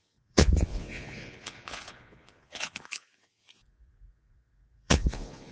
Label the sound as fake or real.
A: fake